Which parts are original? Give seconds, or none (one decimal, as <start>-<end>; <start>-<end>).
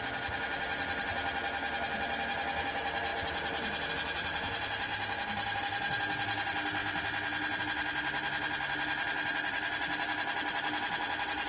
0.0-11.5